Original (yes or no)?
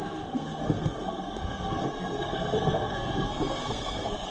no